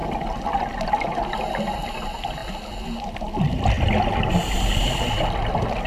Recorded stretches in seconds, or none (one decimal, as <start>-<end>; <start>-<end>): 0.0-5.9